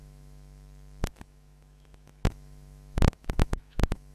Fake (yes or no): yes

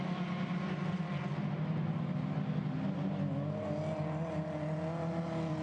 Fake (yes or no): no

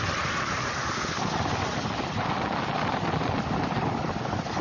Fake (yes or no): no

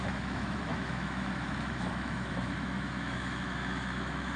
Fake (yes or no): yes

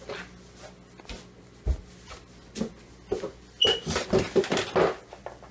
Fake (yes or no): no